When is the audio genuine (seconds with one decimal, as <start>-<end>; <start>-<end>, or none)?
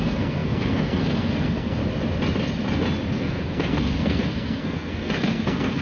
1.8-3.1